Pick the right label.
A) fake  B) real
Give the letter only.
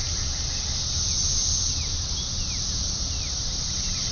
B